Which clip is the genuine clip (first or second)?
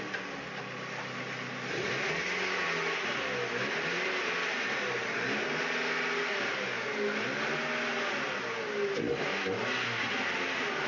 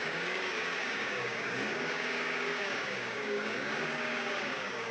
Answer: first